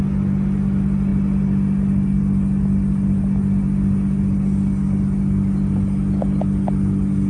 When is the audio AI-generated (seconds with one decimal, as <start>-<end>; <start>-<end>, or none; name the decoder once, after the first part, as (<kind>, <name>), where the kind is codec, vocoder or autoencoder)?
none